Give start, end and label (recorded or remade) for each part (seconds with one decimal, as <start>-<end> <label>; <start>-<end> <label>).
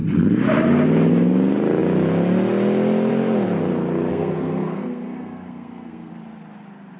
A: 0.0-4.1 recorded; 4.1-6.1 remade; 6.1-7.0 recorded